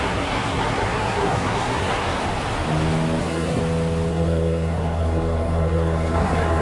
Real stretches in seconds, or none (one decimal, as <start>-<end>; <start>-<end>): 2.2-3.2; 3.6-4.1